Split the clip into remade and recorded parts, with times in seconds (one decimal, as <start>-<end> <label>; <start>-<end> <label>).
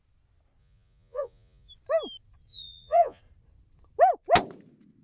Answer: 0.0-0.6 recorded; 0.6-1.7 remade; 1.7-2.5 recorded; 2.5-3.2 remade; 3.2-5.0 recorded